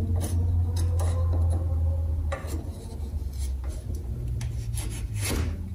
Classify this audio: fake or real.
real